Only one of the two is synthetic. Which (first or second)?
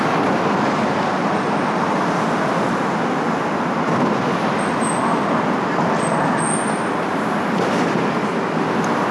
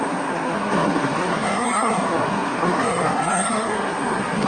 second